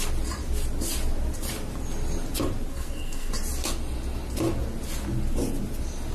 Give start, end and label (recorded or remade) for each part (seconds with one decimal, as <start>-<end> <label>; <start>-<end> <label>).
0.0-2.7 recorded; 2.7-3.3 remade; 3.3-6.1 recorded